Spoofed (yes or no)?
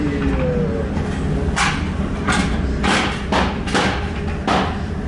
no